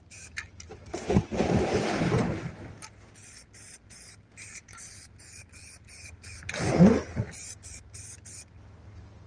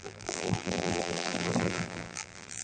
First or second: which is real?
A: first